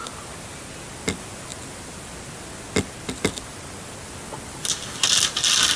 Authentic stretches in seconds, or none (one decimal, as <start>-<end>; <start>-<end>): 0.0-5.8